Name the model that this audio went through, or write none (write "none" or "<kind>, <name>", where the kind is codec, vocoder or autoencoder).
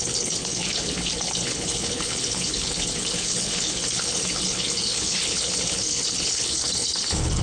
codec, HILCodec